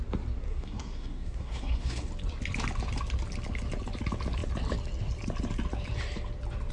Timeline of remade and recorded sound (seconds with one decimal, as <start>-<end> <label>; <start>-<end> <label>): 0.0-0.4 recorded; 0.4-2.1 remade; 2.1-6.7 recorded